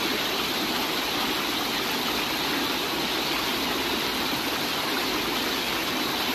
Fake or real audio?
real